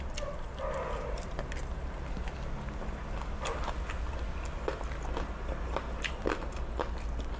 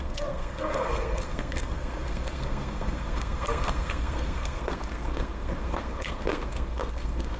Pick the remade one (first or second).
second